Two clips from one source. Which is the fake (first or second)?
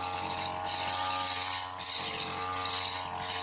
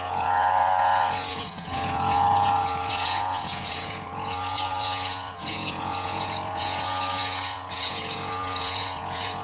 second